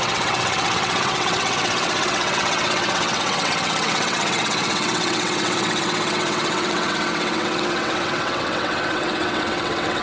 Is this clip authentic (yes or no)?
no